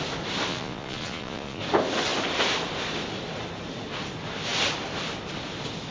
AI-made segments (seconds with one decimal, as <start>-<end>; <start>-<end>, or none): 0.5-1.6